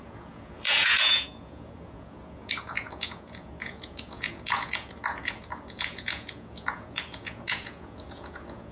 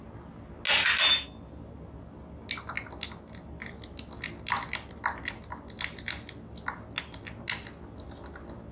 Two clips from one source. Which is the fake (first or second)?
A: first